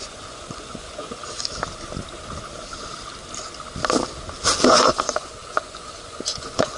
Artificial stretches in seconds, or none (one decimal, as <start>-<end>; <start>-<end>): 0.0-1.2; 4.7-6.8